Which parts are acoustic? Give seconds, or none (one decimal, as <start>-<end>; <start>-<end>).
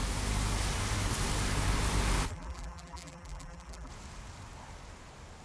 0.0-2.3; 3.9-5.4